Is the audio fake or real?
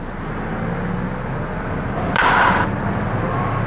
real